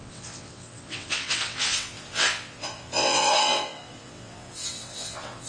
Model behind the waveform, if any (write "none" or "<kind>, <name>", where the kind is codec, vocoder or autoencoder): vocoder, WaveNeXt